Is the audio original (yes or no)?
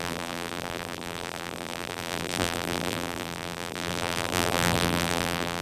no